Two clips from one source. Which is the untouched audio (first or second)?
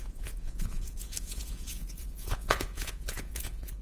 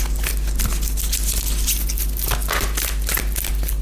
second